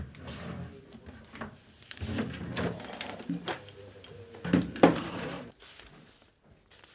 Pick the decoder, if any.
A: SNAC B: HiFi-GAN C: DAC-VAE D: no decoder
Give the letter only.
D